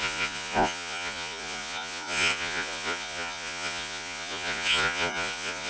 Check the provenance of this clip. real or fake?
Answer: fake